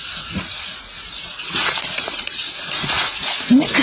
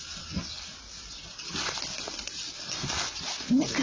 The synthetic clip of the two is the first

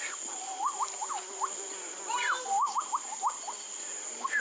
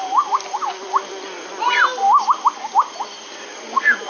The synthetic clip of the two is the first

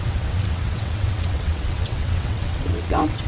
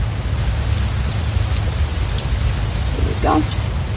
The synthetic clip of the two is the first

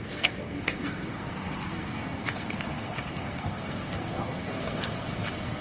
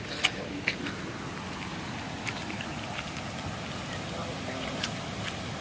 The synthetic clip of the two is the first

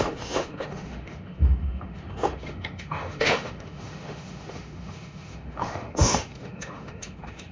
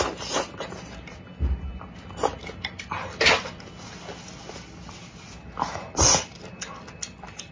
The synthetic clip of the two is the first